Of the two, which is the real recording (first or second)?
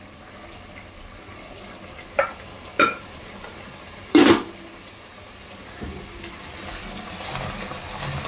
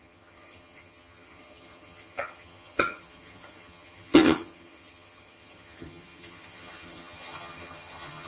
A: first